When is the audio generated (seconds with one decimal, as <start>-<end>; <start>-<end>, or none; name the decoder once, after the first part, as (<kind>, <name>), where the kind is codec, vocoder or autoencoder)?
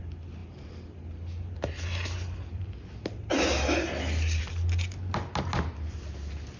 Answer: none